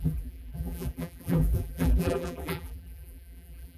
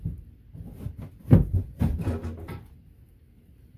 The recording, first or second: second